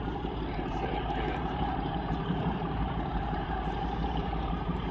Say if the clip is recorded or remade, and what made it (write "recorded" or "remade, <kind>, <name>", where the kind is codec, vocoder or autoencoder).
remade, vocoder, BigVGAN v2